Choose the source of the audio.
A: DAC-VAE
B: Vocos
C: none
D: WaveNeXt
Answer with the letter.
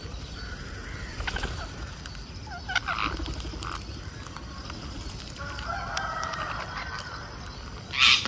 C